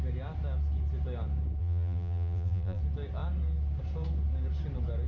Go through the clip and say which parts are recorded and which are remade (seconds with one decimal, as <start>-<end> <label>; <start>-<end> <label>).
0.0-1.6 recorded; 1.6-2.8 remade; 2.8-5.1 recorded